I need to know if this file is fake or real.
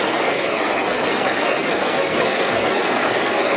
fake